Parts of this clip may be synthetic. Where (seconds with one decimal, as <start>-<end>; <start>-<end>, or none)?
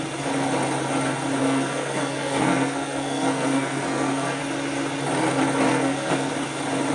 1.4-4.4; 5.7-6.3